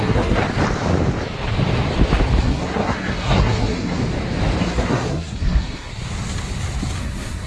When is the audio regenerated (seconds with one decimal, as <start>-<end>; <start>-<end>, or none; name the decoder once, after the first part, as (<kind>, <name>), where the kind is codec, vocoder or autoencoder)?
0.0-0.4 (codec, SNAC); 2.4-4.0; 4.6-5.9; 7.0-7.5